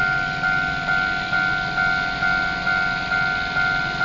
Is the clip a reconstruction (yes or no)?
no